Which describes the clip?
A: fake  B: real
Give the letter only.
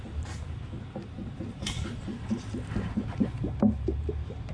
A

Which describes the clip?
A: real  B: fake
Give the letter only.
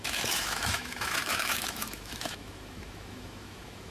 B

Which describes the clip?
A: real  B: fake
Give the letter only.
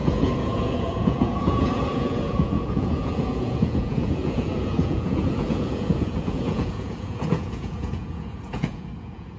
B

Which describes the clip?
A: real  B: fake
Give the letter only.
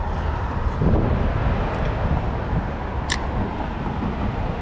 A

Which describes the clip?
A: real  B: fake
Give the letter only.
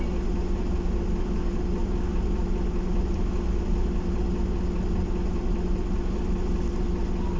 A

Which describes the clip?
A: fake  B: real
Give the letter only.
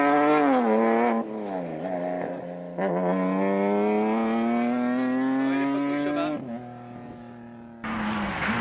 B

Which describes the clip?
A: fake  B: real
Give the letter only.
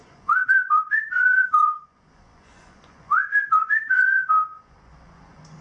A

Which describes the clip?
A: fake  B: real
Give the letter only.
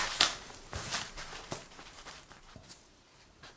A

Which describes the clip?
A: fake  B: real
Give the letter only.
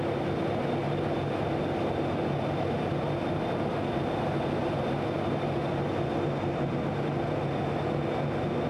B